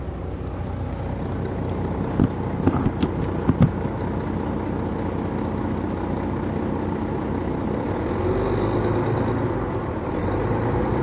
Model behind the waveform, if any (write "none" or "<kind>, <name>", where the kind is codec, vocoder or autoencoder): none